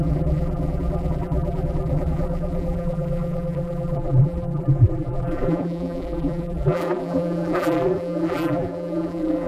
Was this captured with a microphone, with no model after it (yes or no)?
no